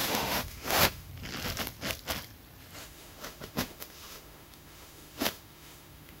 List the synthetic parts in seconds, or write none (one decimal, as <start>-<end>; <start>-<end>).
0.0-1.1; 2.8-6.2